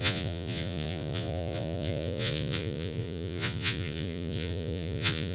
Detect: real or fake fake